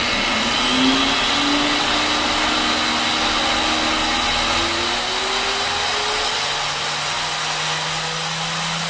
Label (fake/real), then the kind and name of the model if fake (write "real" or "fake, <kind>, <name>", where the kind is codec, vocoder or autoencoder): real